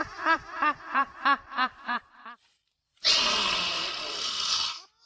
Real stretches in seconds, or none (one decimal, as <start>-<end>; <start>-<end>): 3.1-5.1